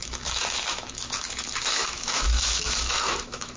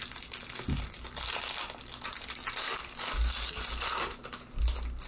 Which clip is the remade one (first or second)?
first